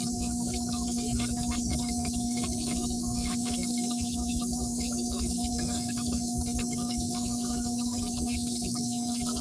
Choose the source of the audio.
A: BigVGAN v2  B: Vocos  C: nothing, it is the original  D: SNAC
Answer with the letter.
D